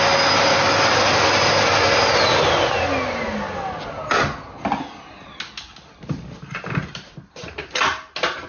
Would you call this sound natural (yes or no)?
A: yes